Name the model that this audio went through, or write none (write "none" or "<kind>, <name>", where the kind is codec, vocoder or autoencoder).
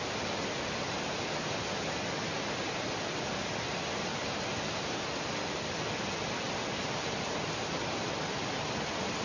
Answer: none